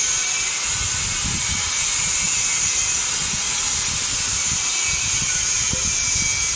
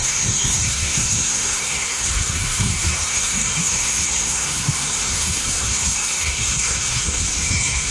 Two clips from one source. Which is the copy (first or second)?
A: second